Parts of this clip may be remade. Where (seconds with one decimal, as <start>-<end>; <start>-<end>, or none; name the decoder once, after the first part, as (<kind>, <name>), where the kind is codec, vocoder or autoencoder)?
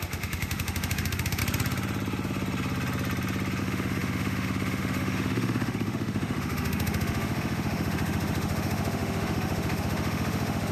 0.0-1.4 (autoencoder, DAC-VAE); 3.6-10.7